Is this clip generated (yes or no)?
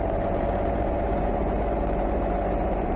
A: yes